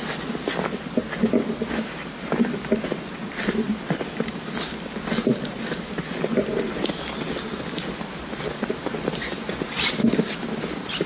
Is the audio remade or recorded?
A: recorded